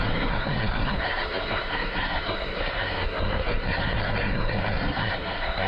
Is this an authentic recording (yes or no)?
no